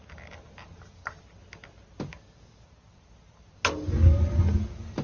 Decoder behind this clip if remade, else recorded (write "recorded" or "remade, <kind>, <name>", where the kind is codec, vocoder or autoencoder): recorded